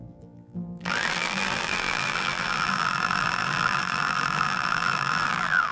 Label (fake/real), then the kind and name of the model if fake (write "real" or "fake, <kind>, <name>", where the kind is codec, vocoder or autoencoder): fake, vocoder, BigVGAN v2